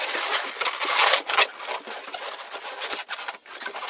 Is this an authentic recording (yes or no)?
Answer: yes